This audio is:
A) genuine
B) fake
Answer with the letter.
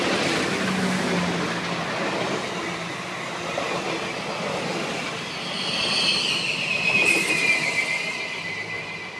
A